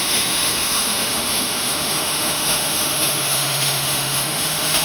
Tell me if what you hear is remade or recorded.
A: remade